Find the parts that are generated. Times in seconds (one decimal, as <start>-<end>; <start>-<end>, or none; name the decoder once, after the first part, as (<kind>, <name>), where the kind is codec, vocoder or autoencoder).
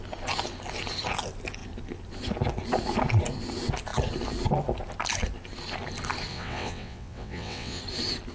6.3-7.8 (vocoder, WaveNeXt)